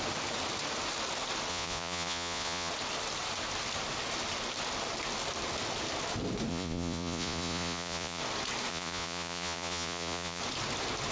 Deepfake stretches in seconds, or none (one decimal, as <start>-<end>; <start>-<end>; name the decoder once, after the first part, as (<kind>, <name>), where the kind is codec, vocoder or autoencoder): 1.5-2.7 (vocoder, Vocos); 6.5-8.2; 8.7-10.4